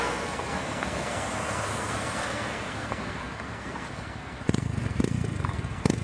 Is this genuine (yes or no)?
no